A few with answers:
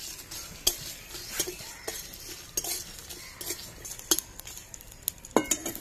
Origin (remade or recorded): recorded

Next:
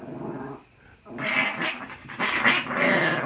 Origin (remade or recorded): recorded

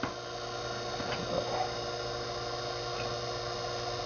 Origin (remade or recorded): recorded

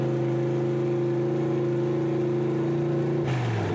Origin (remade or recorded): recorded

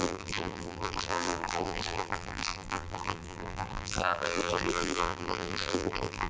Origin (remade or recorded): remade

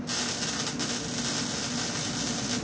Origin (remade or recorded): recorded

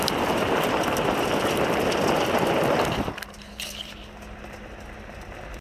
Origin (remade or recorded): recorded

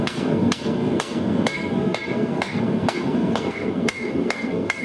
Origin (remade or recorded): remade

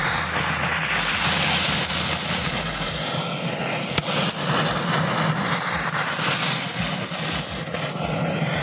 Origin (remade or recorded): recorded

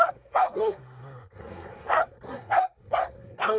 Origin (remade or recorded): remade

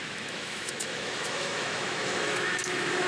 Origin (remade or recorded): remade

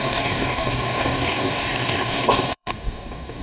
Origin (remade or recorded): remade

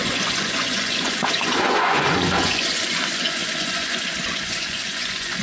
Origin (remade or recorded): remade